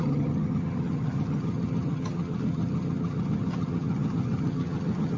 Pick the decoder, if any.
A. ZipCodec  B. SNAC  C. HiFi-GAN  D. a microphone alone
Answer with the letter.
C